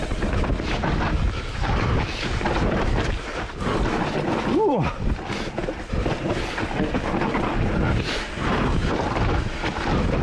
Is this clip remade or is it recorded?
recorded